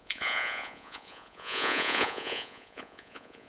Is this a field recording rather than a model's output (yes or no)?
no